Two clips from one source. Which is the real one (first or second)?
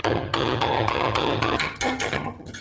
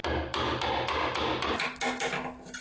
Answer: second